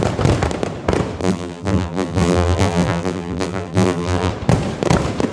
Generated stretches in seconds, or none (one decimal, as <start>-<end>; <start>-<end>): 1.2-4.3